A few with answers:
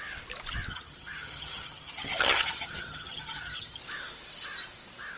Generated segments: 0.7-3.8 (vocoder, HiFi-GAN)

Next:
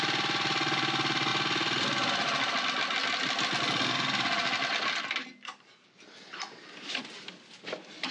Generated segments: 5.8-7.0 (vocoder, BigVGAN v2)

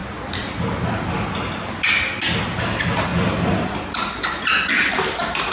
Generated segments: none